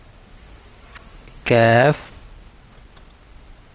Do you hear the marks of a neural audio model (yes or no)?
yes